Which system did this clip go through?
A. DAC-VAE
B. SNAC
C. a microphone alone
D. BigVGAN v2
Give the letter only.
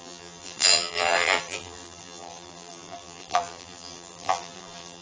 D